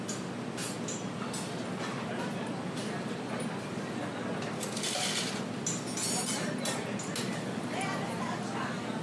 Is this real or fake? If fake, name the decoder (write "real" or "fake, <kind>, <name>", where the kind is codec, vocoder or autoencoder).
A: real